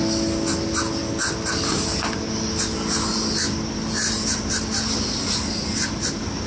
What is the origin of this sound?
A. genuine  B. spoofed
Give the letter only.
A